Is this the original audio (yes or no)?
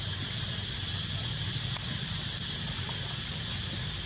yes